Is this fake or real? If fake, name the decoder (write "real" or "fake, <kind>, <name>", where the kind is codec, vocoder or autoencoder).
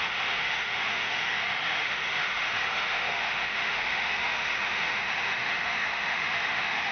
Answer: fake, autoencoder, DAC-VAE